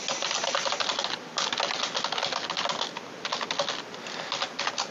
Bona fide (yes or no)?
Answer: yes